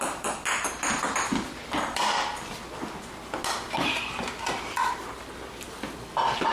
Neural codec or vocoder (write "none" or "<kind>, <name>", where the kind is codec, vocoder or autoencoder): none